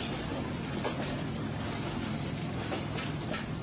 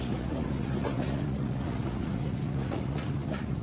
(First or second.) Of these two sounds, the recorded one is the first